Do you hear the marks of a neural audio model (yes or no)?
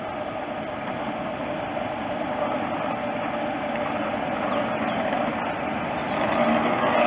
no